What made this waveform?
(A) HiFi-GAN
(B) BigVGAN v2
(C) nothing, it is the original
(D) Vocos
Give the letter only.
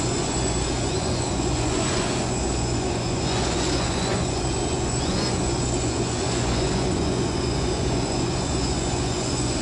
D